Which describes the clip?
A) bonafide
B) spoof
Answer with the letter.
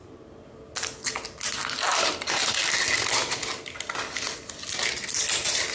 A